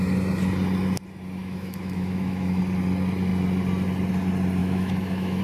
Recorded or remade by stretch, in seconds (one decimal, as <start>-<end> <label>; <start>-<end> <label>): 0.0-1.4 recorded; 1.4-2.6 remade; 2.6-4.6 recorded; 4.6-5.4 remade